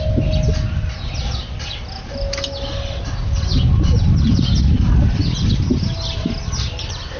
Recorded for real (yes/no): yes